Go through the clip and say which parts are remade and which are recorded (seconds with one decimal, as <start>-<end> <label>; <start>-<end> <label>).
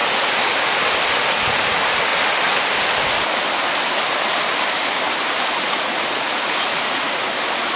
0.0-5.5 recorded; 5.5-7.3 remade; 7.3-7.8 recorded